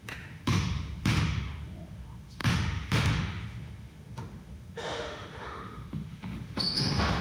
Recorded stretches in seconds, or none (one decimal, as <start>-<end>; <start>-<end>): none